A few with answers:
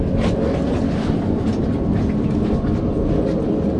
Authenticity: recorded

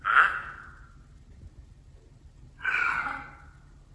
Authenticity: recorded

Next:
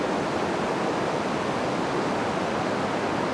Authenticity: recorded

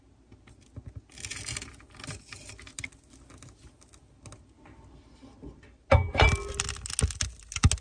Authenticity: recorded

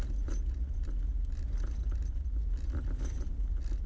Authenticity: recorded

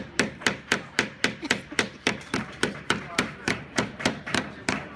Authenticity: remade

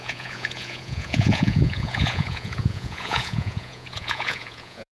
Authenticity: remade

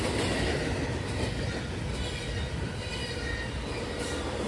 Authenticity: recorded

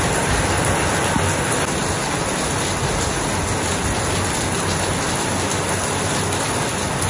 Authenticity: recorded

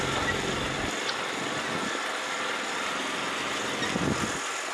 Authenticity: recorded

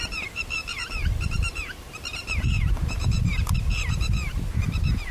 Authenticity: remade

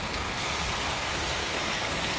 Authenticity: remade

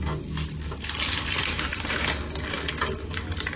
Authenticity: recorded